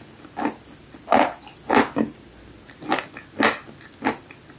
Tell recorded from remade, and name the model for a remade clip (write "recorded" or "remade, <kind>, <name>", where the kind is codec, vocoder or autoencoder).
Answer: recorded